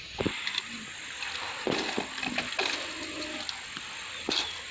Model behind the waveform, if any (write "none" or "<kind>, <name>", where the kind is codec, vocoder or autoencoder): vocoder, BigVGAN v2